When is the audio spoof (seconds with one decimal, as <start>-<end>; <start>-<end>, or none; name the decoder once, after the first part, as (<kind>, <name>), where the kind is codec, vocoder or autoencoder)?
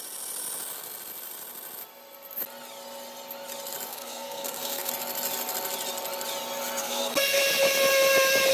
3.9-4.9 (codec, SNAC); 6.8-7.4